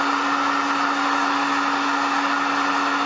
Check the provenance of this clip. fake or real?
real